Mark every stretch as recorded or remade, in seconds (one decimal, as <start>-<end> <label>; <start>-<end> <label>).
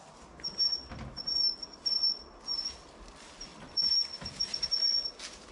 0.0-5.5 recorded